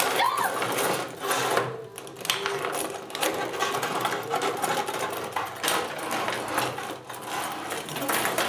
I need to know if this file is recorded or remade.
recorded